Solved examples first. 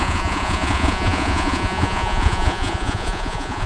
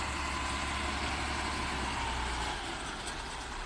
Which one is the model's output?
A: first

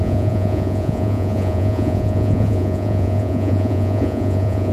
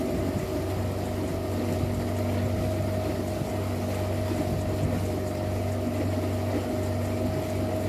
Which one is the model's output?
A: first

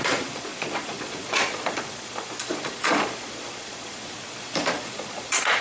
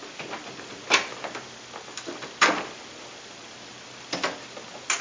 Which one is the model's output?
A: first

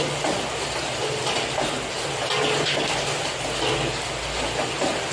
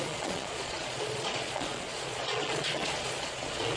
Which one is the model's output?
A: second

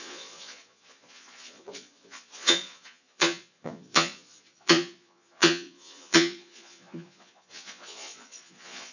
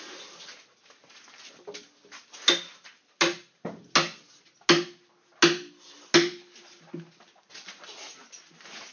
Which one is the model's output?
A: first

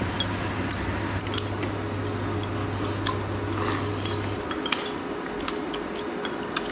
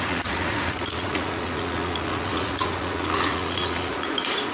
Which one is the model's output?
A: second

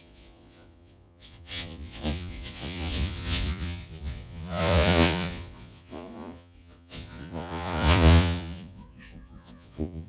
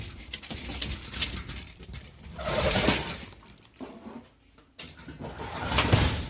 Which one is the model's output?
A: first